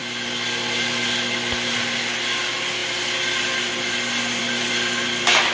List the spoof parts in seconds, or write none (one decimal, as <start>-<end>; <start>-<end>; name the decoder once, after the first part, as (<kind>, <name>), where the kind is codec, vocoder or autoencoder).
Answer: none